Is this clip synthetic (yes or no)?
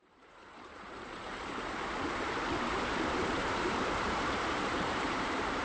yes